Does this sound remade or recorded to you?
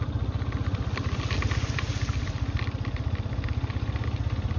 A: recorded